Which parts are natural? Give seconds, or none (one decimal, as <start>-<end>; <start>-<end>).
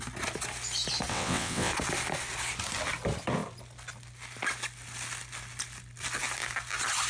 0.0-1.1; 1.7-7.1